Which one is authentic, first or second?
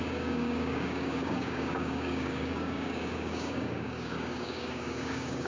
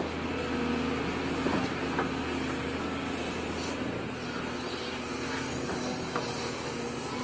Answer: second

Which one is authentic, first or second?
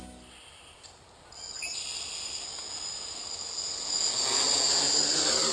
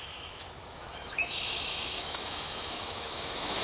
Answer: first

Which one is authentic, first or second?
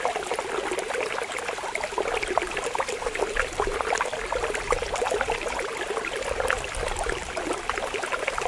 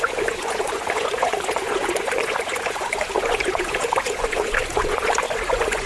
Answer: first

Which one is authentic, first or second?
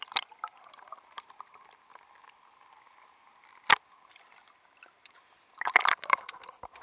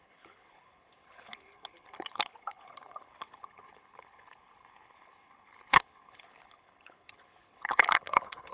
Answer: first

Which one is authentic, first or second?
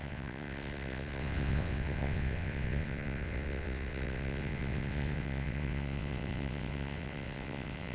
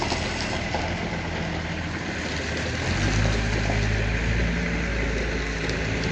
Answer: second